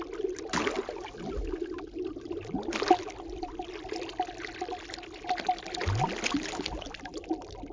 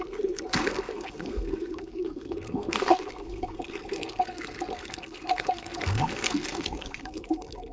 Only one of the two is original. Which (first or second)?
first